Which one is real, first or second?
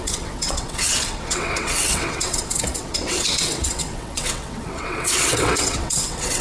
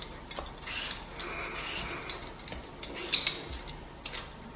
second